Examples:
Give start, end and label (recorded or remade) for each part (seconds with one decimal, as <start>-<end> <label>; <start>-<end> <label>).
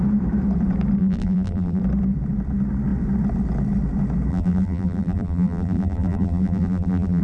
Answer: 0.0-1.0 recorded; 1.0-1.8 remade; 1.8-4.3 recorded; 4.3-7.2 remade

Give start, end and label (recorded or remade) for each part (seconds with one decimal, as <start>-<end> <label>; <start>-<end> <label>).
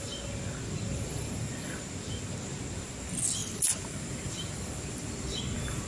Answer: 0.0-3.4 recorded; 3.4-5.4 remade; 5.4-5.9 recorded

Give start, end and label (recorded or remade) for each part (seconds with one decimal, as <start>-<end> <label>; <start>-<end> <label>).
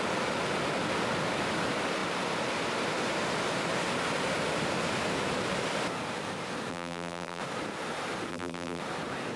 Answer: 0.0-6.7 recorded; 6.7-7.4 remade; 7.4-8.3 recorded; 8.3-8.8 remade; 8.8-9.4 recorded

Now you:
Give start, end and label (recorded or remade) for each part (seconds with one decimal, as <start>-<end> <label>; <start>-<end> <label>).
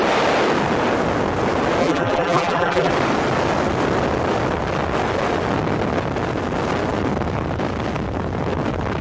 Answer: 0.0-1.8 recorded; 1.8-2.9 remade; 2.9-9.0 recorded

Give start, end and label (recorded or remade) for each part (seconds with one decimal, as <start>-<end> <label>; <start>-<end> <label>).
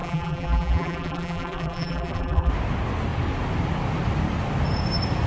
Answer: 0.0-2.5 remade; 2.5-5.3 recorded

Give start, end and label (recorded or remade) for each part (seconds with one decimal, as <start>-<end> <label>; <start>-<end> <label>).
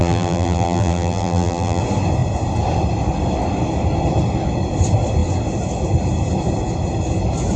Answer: 0.0-1.8 remade; 1.8-7.6 recorded